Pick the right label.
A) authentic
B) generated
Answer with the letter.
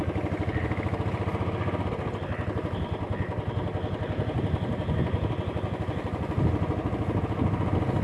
A